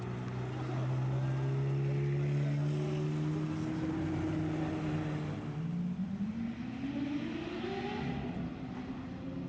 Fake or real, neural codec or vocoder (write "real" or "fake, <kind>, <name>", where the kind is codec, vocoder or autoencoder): real